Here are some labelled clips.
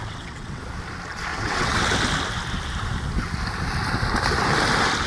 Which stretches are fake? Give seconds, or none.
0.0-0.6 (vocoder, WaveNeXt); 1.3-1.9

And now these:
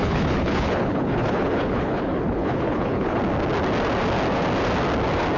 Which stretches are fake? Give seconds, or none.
0.0-3.2 (codec, HILCodec)

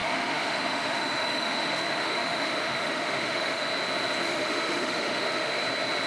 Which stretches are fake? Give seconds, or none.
0.0-3.7 (autoencoder, DAC-VAE); 4.3-5.6

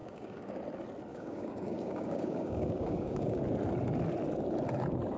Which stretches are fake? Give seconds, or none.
0.0-0.6 (codec, DAC); 1.1-3.4

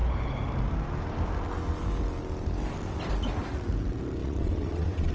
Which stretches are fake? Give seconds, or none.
4.2-5.1 (vocoder, WaveNeXt)

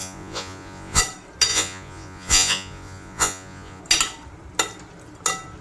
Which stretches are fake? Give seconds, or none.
0.0-1.0 (vocoder, Vocos); 1.5-3.8

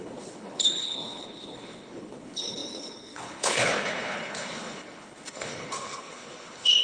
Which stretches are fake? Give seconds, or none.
0.0-6.8 (codec, HILCodec)

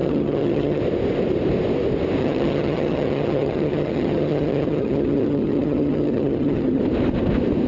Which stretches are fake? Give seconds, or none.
0.0-0.8 (vocoder, HiFi-GAN); 2.2-6.8